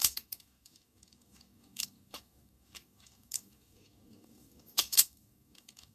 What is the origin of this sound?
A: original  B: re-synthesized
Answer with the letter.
B